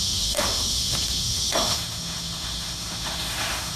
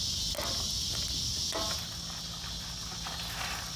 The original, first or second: second